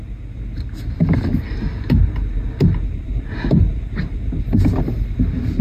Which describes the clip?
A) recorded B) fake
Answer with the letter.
A